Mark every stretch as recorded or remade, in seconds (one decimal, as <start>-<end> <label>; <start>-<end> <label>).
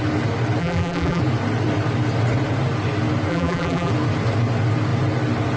0.0-0.6 recorded; 0.6-1.2 remade; 1.2-3.3 recorded; 3.3-3.9 remade; 3.9-5.6 recorded